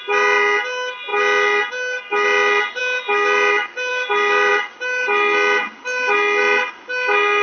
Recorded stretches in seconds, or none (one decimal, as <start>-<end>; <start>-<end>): 0.0-7.4

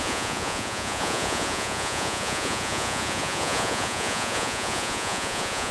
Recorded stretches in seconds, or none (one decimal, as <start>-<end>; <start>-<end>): none

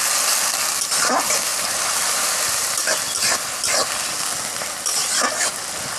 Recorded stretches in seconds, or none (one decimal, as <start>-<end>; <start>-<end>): 0.0-6.0

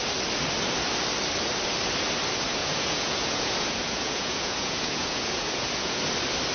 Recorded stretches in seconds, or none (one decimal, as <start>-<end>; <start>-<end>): 0.0-2.6; 6.0-6.5

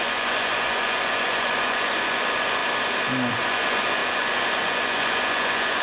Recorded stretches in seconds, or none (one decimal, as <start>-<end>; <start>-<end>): 2.6-3.3